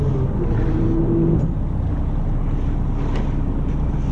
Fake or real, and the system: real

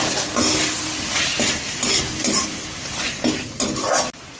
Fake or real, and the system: real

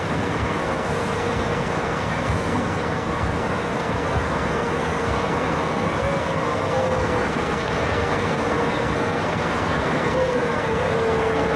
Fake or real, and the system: fake, codec, SNAC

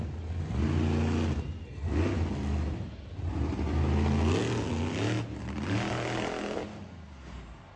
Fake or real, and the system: real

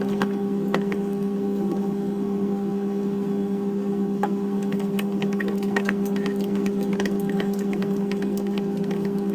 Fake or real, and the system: fake, codec, SNAC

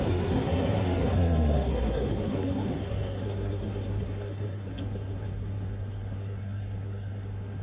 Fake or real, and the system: fake, codec, SNAC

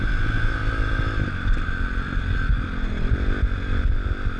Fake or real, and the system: real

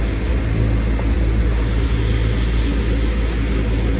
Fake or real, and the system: real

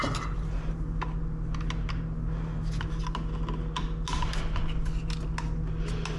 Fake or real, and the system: real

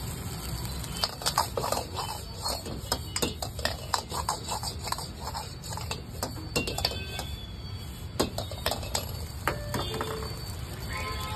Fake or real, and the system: real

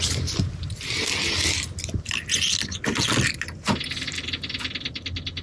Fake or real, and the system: real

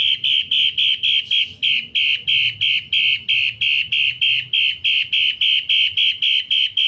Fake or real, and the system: real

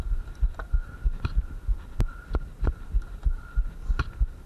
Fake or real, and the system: real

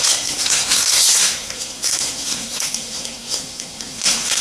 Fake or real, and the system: fake, codec, SNAC